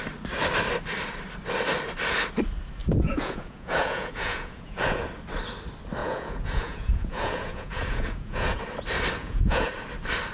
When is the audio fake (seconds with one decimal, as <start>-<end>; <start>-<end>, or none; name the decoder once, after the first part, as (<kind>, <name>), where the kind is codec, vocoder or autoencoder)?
2.8-5.1 (vocoder, Vocos); 6.0-8.6; 9.2-9.7